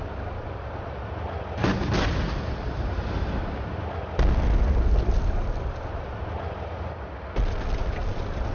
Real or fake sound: real